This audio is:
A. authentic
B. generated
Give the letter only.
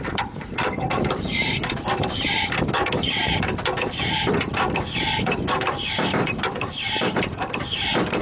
B